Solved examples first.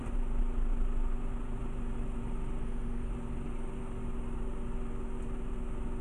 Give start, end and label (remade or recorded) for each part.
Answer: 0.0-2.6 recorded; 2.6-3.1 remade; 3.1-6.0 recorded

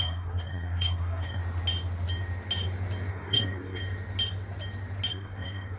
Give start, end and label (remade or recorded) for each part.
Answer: 0.0-1.4 remade; 1.4-3.1 recorded; 3.1-3.8 remade; 3.8-5.1 recorded; 5.1-5.8 remade

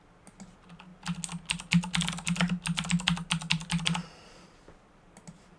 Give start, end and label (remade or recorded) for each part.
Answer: 0.0-5.6 recorded

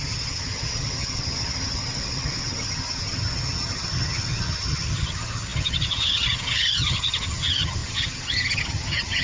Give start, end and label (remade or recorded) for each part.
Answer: 0.0-9.2 remade

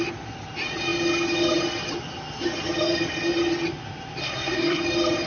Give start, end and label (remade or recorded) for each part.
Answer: 0.0-4.2 recorded; 4.2-4.8 remade; 4.8-5.3 recorded

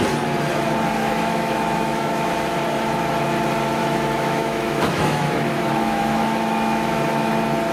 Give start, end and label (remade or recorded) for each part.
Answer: 0.0-1.0 recorded; 1.0-2.5 remade; 2.5-3.8 recorded; 3.8-7.3 remade; 7.3-7.7 recorded

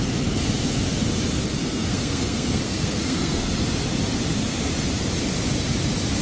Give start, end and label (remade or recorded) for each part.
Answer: 0.0-1.6 recorded; 1.6-3.5 remade; 3.5-6.2 recorded